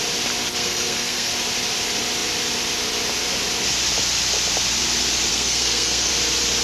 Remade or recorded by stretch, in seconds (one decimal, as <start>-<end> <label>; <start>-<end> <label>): 0.0-0.6 recorded; 0.6-1.3 remade; 1.3-5.3 recorded; 5.3-6.1 remade; 6.1-6.6 recorded